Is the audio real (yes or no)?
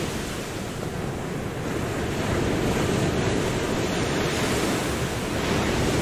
yes